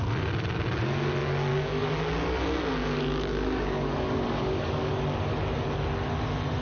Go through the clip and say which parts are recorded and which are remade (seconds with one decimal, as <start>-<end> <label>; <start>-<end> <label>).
0.0-1.5 recorded; 1.5-2.1 remade; 2.1-2.8 recorded; 2.8-5.0 remade; 5.0-6.6 recorded